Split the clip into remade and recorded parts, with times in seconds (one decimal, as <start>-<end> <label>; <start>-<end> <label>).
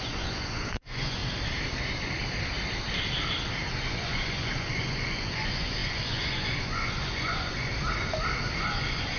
0.0-1.2 remade; 1.2-3.7 recorded; 3.7-7.7 remade; 7.7-8.6 recorded; 8.6-9.2 remade